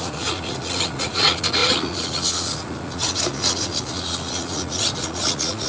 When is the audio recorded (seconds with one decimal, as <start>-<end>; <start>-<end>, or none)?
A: none